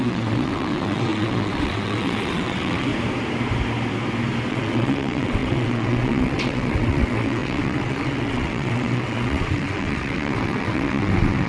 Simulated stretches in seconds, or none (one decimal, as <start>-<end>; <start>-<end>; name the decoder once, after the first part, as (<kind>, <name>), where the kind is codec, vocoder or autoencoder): 0.0-2.9 (vocoder, WaveNeXt); 4.5-11.5